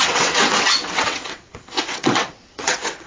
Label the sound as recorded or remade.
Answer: remade